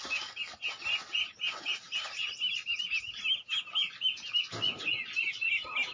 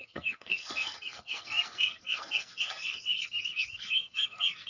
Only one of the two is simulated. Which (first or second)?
second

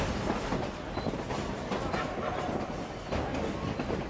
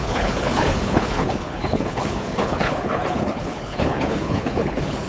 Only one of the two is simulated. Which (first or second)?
second